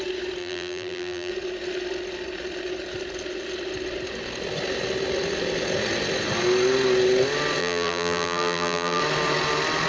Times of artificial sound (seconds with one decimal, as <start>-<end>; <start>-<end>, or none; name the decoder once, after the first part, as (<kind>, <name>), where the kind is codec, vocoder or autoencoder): 0.4-1.3 (vocoder, BigVGAN v2); 7.6-9.0